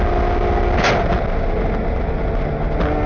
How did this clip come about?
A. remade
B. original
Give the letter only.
B